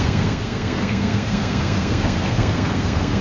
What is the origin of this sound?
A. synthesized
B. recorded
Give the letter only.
A